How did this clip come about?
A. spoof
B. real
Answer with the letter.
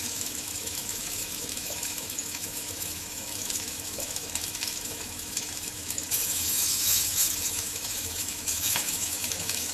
A